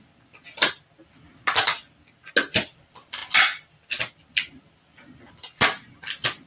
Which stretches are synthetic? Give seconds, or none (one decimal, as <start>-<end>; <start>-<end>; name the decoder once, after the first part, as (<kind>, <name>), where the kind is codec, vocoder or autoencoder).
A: none